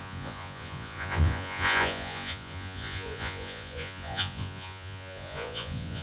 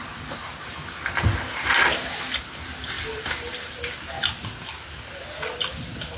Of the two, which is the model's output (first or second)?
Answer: first